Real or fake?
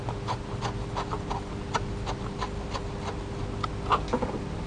real